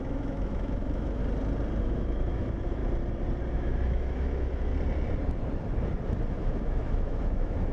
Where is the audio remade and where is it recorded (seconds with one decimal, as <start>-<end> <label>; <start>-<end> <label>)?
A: 0.0-1.2 remade; 1.2-1.8 recorded; 1.8-2.8 remade; 2.8-3.5 recorded; 3.5-4.7 remade; 4.7-6.3 recorded; 6.3-7.7 remade